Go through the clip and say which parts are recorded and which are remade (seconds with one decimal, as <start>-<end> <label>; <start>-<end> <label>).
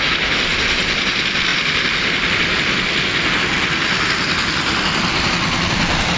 0.0-6.2 recorded